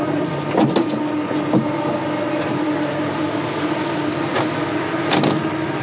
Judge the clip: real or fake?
real